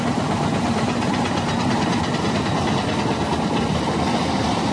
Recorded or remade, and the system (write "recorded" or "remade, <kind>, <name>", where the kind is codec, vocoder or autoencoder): recorded